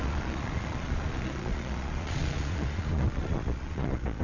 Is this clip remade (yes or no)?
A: yes